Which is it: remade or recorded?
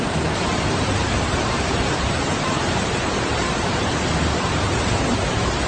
remade